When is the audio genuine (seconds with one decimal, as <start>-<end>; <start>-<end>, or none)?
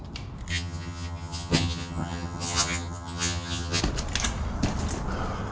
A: 0.0-0.5; 3.8-5.5